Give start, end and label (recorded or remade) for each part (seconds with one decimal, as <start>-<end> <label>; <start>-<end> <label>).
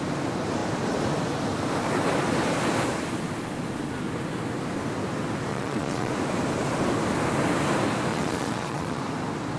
0.0-5.5 recorded; 5.5-6.1 remade; 6.1-8.1 recorded; 8.1-9.0 remade; 9.0-9.6 recorded